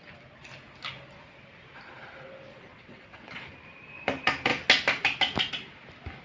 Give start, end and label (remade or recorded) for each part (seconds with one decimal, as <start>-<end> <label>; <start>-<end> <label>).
0.0-2.5 recorded; 2.5-3.5 remade; 3.5-6.2 recorded